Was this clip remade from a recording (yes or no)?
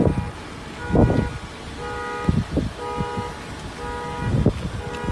no